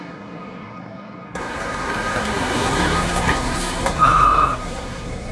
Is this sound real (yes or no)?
no